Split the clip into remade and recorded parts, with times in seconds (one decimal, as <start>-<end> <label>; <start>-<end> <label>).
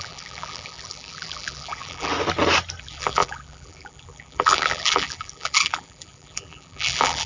0.0-2.1 remade; 2.1-2.8 recorded; 2.8-7.3 remade